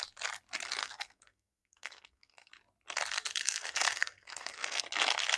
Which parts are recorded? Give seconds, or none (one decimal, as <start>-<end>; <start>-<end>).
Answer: 0.0-0.8; 2.5-3.4; 4.8-5.4